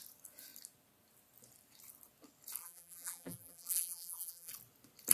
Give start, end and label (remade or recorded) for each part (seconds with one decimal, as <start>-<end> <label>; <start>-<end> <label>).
0.0-2.6 recorded; 2.6-4.5 remade; 4.5-5.1 recorded